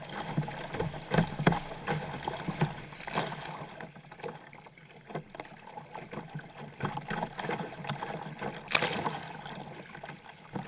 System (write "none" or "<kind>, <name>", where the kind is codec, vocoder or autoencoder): none